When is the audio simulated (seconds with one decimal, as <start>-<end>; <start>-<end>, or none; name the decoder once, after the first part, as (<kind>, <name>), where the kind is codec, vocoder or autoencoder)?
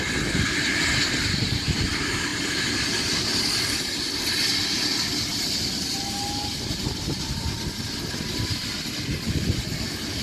none